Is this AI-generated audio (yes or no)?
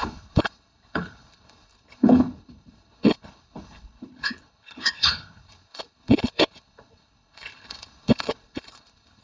yes